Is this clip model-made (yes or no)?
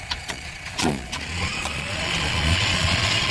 yes